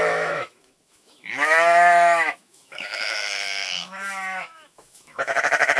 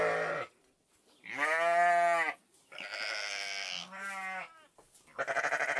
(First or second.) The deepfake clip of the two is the first